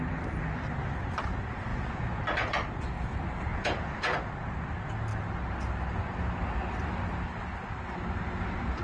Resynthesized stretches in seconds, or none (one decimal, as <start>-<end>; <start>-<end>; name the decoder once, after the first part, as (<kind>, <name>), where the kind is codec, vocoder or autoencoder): 1.7-2.2 (vocoder, Vocos); 3.5-4.3